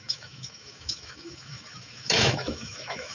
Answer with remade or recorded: remade